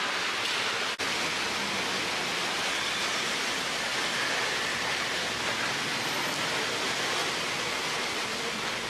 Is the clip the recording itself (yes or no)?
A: yes